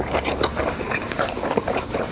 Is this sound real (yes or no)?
no